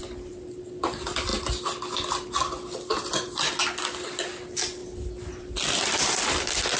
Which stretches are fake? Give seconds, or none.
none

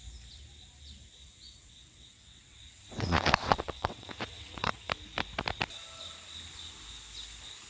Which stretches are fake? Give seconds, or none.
1.2-4.9 (vocoder, WaveNeXt)

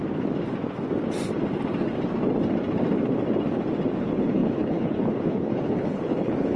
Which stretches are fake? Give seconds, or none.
4.0-6.6 (codec, HILCodec)

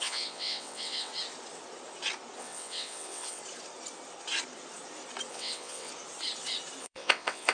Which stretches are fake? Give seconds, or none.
0.0-1.1 (vocoder, WaveNeXt); 2.4-3.4; 5.3-5.9; 6.8-7.5

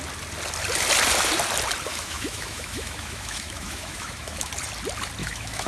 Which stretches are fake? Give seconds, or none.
1.9-4.5 (autoencoder, DAC-VAE); 5.2-5.7

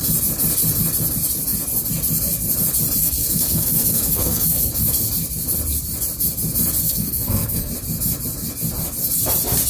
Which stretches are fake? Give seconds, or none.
3.0-4.7 (codec, SNAC); 6.8-7.7

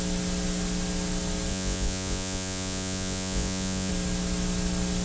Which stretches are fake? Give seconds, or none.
1.5-3.9 (vocoder, Vocos)